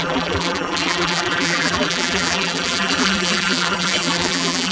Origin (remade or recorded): remade